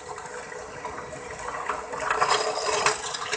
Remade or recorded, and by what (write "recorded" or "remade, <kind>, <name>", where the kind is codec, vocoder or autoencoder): recorded